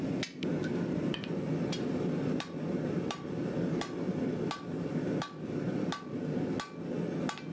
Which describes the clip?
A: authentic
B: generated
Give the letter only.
A